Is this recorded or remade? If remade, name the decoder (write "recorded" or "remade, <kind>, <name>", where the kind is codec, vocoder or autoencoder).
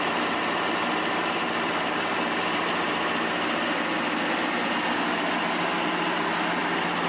recorded